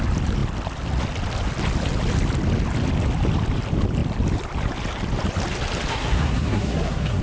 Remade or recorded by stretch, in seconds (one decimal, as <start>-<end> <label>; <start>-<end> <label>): 0.0-5.9 recorded; 5.9-7.2 remade